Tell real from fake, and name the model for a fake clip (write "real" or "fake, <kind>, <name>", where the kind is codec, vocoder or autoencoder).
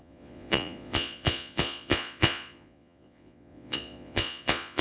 fake, vocoder, Vocos